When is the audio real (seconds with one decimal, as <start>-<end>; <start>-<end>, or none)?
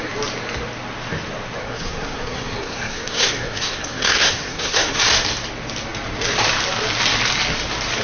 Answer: 0.0-1.6; 5.0-8.0